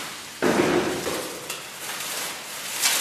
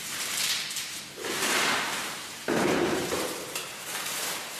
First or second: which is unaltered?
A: first